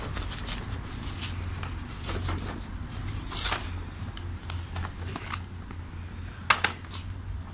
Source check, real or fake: real